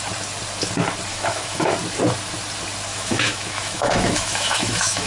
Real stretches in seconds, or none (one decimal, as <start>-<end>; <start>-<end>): 0.0-1.1; 1.7-2.9